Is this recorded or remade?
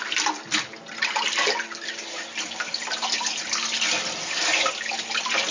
recorded